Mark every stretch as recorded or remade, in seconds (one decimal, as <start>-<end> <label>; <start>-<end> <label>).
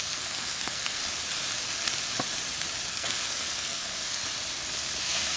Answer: 0.0-1.0 remade; 1.0-2.9 recorded; 2.9-4.2 remade; 4.2-5.0 recorded; 5.0-5.4 remade